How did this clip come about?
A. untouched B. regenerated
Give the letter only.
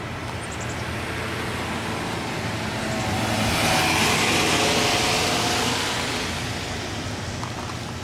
A